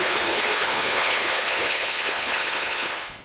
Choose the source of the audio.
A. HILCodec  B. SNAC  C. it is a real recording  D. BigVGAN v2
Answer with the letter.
A